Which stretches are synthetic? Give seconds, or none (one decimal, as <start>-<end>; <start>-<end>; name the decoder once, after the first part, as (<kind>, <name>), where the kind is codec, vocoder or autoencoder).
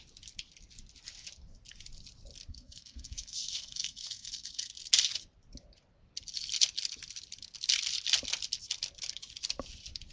2.5-4.7 (codec, SNAC)